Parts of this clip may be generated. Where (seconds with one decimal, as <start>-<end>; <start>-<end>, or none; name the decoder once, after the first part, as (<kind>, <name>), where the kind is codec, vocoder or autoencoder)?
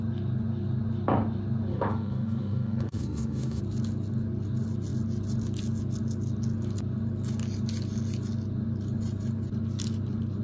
1.7-3.6 (autoencoder, DAC-VAE)